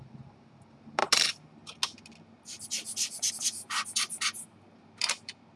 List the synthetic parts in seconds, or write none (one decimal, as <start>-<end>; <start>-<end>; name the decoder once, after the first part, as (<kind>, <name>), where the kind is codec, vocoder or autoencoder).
none